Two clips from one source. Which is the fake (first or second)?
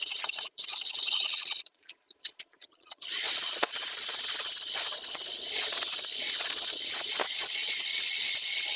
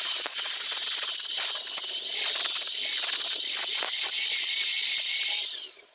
first